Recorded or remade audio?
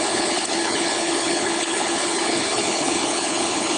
remade